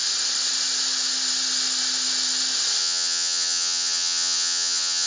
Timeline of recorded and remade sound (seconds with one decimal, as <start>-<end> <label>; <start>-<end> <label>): 0.0-2.8 recorded; 2.8-5.1 remade